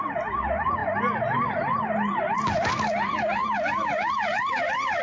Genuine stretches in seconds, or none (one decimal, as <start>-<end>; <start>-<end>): 0.0-5.0